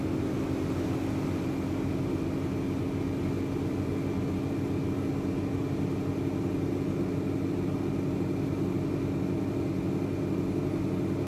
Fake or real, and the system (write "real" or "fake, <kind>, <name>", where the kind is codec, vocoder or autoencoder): real